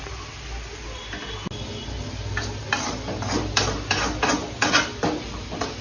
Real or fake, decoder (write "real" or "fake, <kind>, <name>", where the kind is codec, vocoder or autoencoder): real